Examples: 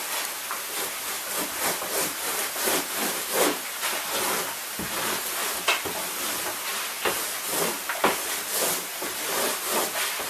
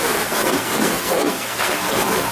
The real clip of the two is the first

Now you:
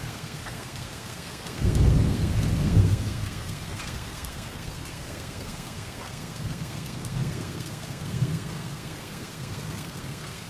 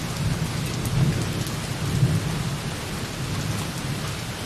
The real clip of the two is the second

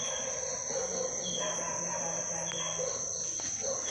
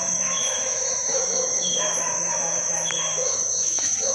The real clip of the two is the first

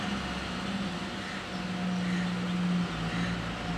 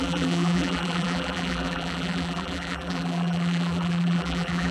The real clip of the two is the first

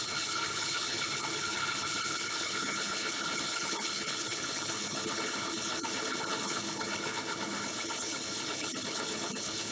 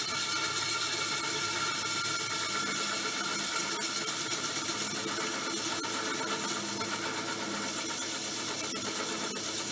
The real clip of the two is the second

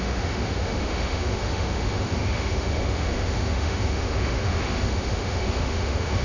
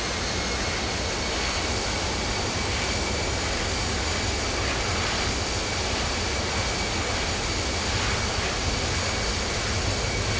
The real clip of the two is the second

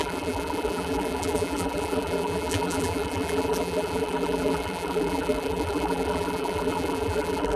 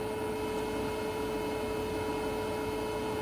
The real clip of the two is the second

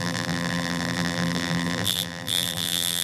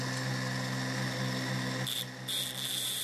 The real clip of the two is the second